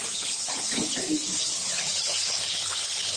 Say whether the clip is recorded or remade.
remade